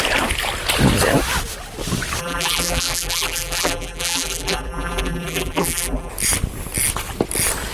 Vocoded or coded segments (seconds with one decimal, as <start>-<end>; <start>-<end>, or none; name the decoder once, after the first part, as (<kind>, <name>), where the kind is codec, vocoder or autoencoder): 2.2-6.1 (vocoder, BigVGAN v2)